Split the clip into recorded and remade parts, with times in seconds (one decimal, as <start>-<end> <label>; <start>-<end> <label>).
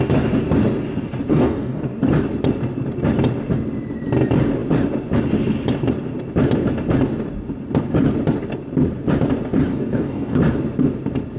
0.0-1.3 recorded; 1.3-2.0 remade; 2.0-9.7 recorded; 9.7-10.4 remade; 10.4-11.4 recorded